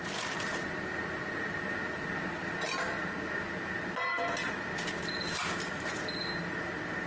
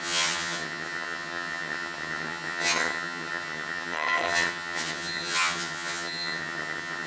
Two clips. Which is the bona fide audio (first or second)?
first